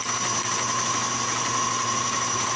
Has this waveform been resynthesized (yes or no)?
no